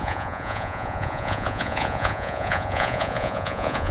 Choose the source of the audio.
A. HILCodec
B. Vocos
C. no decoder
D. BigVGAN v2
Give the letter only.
B